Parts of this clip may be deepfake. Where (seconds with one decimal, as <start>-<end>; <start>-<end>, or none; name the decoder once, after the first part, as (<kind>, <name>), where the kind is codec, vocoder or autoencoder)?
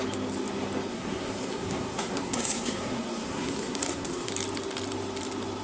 0.9-4.3 (codec, SNAC)